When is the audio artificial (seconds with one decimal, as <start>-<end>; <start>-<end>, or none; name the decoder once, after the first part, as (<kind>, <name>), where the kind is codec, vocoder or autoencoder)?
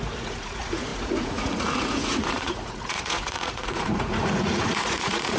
0.0-5.4 (vocoder, Vocos)